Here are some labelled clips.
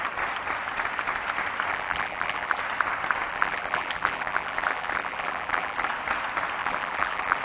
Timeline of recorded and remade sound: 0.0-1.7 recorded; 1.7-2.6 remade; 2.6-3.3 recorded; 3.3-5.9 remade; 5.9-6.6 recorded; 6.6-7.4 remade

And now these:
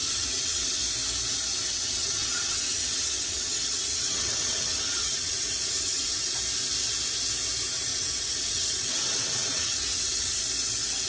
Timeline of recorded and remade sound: 0.0-0.8 remade; 0.8-1.7 recorded; 1.7-6.3 remade; 6.3-7.9 recorded; 7.9-10.4 remade; 10.4-11.1 recorded

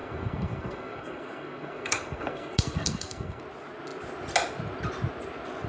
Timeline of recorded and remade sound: 0.0-3.4 remade; 3.4-5.7 recorded